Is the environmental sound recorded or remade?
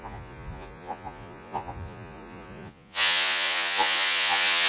remade